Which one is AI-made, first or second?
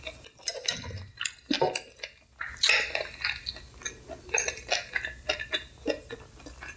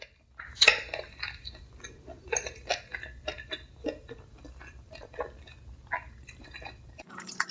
second